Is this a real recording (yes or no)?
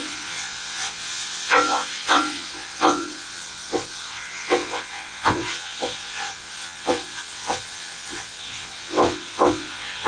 no